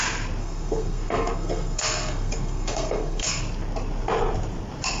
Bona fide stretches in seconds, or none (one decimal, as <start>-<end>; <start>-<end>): 0.0-0.4; 3.4-5.0